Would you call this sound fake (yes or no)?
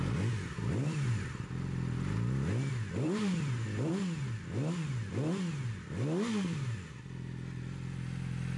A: no